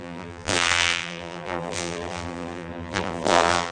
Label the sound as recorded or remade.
remade